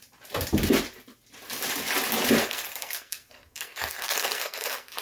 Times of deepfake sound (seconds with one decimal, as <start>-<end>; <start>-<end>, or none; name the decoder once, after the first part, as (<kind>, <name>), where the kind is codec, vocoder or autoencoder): 2.4-5.0 (codec, SNAC)